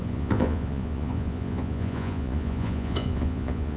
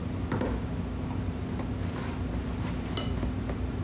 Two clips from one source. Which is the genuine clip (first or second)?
second